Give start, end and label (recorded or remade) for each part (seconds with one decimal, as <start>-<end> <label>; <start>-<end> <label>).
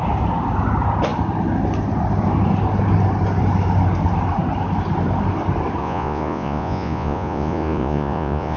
0.0-5.8 recorded; 5.8-8.6 remade